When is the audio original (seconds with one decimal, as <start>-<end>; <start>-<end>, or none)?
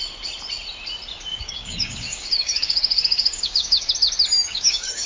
0.0-1.3; 3.9-4.4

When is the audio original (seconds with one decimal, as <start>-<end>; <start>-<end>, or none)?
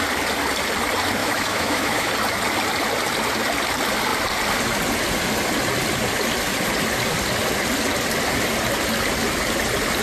0.0-1.2; 2.1-10.0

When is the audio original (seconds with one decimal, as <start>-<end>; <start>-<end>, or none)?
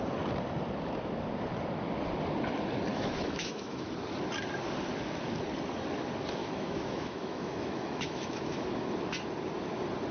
0.0-2.9; 3.9-6.4; 8.7-10.1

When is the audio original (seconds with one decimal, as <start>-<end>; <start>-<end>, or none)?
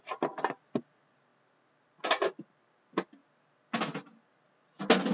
0.0-5.1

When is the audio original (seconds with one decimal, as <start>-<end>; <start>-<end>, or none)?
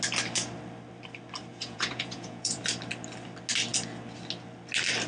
0.0-1.5; 2.6-5.1